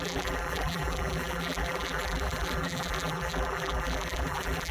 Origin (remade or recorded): remade